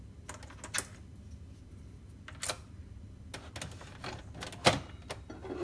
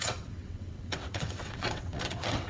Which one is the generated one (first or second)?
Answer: second